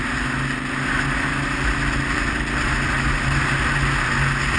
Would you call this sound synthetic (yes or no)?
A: no